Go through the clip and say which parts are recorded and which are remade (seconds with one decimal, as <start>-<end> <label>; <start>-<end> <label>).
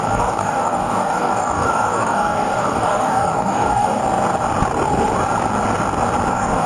0.0-4.0 remade; 4.0-6.3 recorded; 6.3-6.7 remade